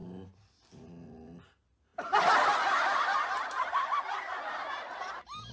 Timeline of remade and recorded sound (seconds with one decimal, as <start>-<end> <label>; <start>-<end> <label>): 0.0-5.5 recorded